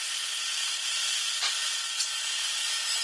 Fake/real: real